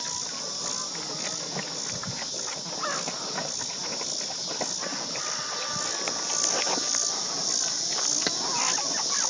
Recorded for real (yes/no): yes